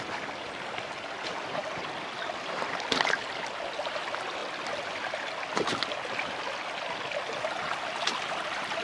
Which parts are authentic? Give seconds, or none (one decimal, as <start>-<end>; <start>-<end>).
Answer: 0.0-8.8